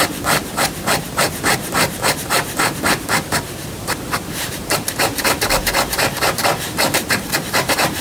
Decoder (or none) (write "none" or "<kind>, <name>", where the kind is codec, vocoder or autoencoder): vocoder, BigVGAN v2